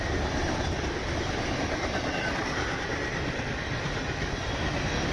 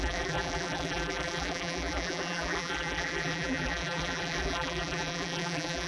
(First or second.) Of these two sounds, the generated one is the second